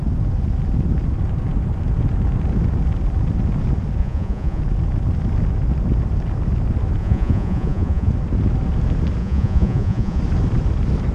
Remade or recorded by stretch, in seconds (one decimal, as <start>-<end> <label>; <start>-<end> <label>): 0.0-4.0 recorded; 4.0-4.6 remade; 4.6-7.0 recorded; 7.0-8.1 remade; 8.1-9.2 recorded; 9.2-10.2 remade; 10.2-11.1 recorded